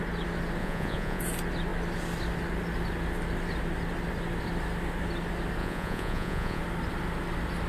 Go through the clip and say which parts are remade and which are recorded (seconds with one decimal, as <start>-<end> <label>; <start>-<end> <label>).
0.0-0.6 recorded; 0.6-1.2 remade; 1.2-5.6 recorded; 5.6-6.6 remade; 6.6-7.7 recorded